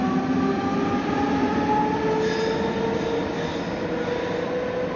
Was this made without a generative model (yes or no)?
yes